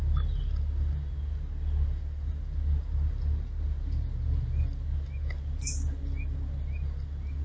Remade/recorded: recorded